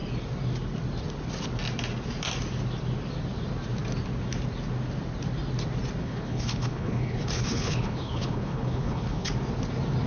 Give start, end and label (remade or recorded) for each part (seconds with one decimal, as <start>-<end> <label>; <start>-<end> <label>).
0.0-6.0 recorded; 6.0-9.3 remade; 9.3-10.1 recorded

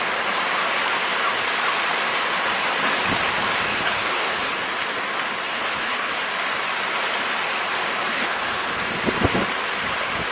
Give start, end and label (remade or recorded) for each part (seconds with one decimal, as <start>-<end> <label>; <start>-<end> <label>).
0.0-3.7 recorded; 3.7-4.5 remade; 4.5-5.5 recorded; 5.5-6.1 remade; 6.1-8.1 recorded; 8.1-8.8 remade; 8.8-10.3 recorded

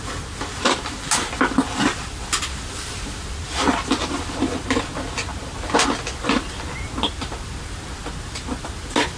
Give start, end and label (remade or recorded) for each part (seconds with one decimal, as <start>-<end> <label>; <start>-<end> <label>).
0.0-9.2 recorded

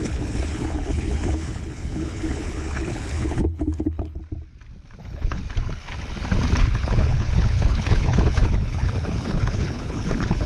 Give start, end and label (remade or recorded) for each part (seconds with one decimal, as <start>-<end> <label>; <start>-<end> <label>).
0.0-4.2 remade; 4.2-5.0 recorded; 5.0-5.4 remade; 5.4-6.6 recorded; 6.6-10.5 remade